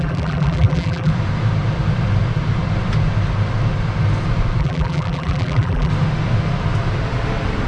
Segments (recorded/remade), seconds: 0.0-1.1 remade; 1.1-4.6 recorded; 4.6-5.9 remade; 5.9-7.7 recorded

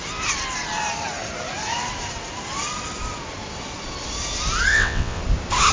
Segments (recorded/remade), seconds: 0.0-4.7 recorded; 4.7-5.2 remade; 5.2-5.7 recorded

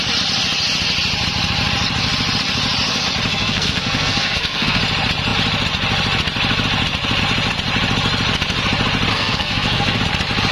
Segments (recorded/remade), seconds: 0.0-3.3 recorded; 3.3-4.8 remade; 4.8-9.1 recorded; 9.1-10.0 remade; 10.0-10.5 recorded

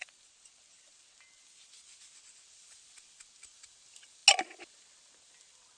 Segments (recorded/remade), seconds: 0.0-5.8 recorded